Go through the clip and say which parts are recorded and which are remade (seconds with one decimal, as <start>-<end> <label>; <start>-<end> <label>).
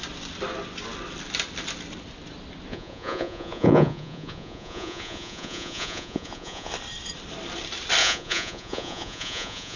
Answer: 0.0-2.7 recorded; 2.7-6.7 remade; 6.7-8.0 recorded; 8.0-9.8 remade